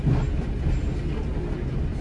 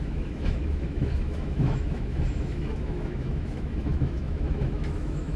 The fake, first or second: second